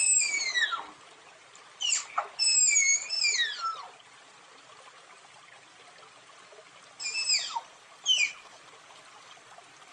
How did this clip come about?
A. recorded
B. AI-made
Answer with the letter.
A